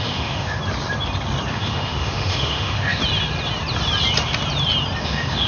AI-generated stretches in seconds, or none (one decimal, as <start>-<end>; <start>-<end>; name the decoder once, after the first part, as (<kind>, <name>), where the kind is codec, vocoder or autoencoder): 0.0-0.6 (autoencoder, DAC-VAE); 1.5-3.0; 5.0-5.5